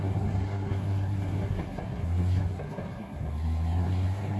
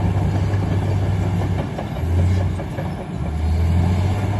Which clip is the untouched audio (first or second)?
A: second